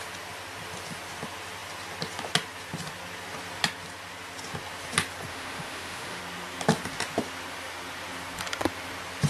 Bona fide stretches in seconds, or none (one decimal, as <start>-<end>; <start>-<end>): 0.0-5.3; 6.2-9.3